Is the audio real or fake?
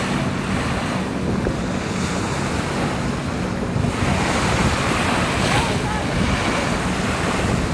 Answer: real